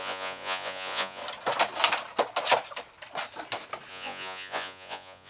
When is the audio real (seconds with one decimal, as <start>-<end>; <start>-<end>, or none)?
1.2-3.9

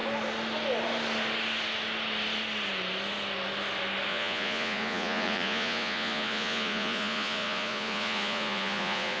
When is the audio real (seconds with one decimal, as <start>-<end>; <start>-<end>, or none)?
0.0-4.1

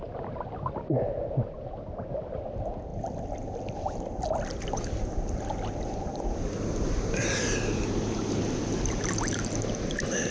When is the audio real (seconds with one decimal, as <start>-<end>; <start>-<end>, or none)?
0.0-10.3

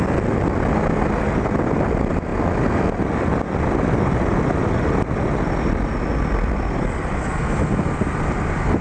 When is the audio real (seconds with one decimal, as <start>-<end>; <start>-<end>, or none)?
0.0-8.8